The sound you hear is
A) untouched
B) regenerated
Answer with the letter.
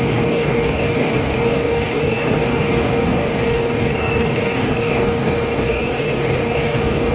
B